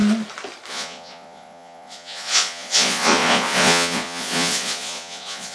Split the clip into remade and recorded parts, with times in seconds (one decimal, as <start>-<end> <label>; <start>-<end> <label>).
0.0-0.7 recorded; 0.7-5.5 remade

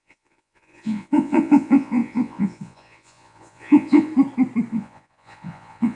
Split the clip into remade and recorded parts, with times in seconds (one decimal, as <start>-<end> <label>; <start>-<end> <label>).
0.0-4.1 remade; 4.1-4.7 recorded; 4.7-6.0 remade

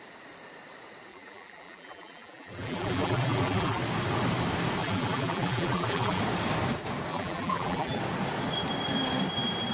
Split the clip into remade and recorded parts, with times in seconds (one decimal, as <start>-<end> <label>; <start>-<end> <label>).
0.0-1.1 recorded; 1.1-3.8 remade; 3.8-4.8 recorded; 4.8-6.2 remade; 6.2-7.1 recorded; 7.1-8.0 remade; 8.0-9.7 recorded

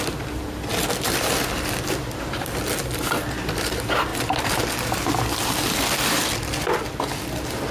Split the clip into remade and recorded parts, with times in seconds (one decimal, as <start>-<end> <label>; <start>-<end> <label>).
0.0-7.7 recorded

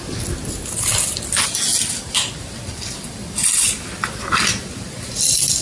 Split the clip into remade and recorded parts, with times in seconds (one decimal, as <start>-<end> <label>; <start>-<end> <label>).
0.0-1.7 recorded; 1.7-5.1 remade; 5.1-5.6 recorded